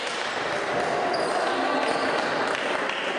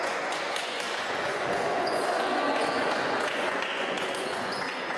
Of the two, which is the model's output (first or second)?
second